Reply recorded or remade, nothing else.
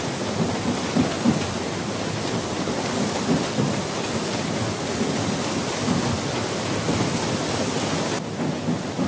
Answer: recorded